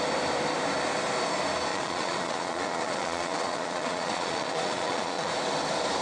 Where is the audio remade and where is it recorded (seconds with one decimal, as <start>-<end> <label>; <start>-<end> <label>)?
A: 0.0-1.7 recorded; 1.7-5.3 remade; 5.3-6.0 recorded